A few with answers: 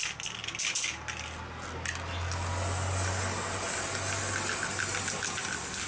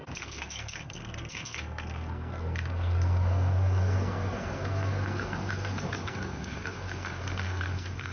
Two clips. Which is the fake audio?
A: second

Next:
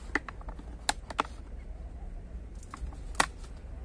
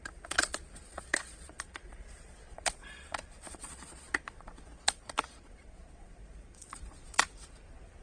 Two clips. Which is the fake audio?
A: second